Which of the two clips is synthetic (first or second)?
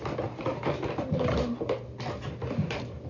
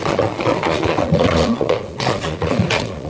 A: second